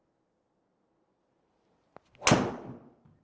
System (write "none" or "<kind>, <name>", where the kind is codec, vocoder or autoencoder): none